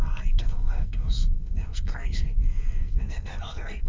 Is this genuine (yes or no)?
no